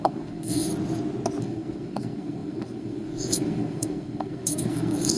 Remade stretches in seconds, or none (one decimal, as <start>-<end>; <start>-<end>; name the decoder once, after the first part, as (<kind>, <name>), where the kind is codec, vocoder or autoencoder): 0.0-0.7 (codec, SNAC); 1.4-5.2